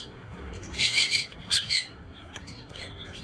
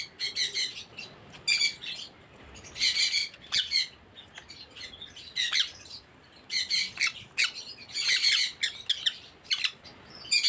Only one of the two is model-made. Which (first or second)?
first